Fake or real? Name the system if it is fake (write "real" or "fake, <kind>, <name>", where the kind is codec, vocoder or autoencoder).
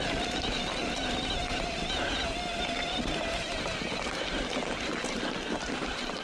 real